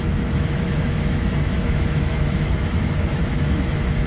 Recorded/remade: remade